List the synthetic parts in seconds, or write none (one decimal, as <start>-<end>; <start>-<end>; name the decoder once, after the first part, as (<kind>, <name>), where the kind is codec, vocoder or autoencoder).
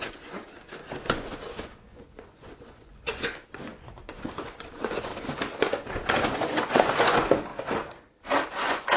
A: 0.0-5.1 (vocoder, Vocos); 5.6-7.5; 8.5-9.0